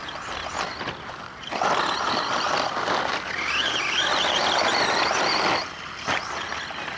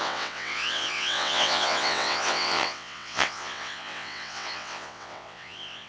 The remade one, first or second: second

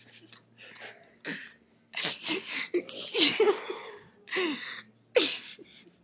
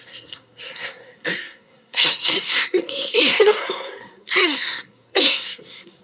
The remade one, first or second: second